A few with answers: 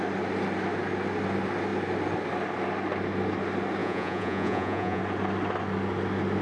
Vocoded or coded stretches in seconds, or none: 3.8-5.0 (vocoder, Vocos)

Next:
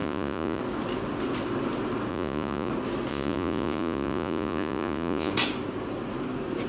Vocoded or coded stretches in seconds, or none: 0.0-0.6 (vocoder, Vocos); 2.1-2.7; 3.1-5.3

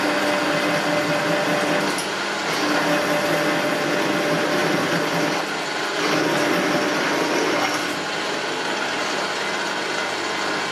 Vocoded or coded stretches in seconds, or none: none

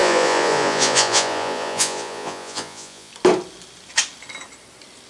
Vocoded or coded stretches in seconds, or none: 0.0-3.1 (vocoder, Vocos)

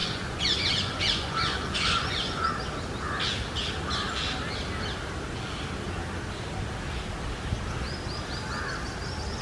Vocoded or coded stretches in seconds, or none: 0.0-2.5 (vocoder, Vocos)

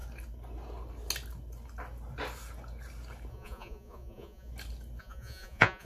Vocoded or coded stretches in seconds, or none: 3.3-4.5 (vocoder, Vocos); 5.0-5.9

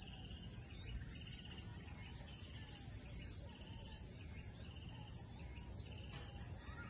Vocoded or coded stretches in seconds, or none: none